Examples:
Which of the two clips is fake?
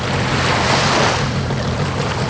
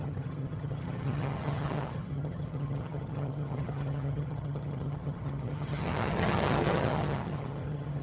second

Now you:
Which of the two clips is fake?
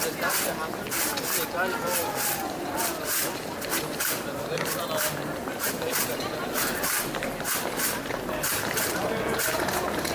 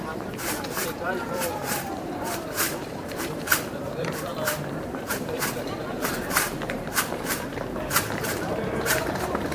second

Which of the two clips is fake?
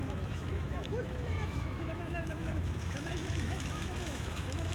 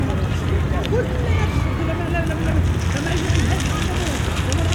first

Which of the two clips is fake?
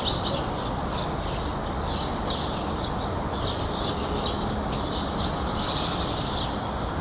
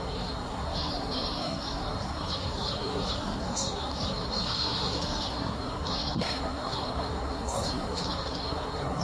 second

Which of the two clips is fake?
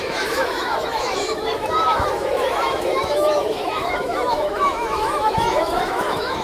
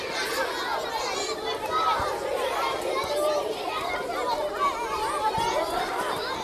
first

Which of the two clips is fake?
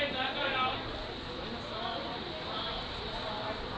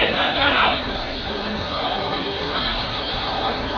second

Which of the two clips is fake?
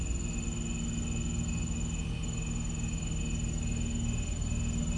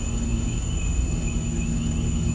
second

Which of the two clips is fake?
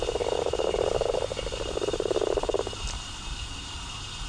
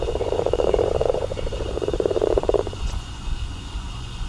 second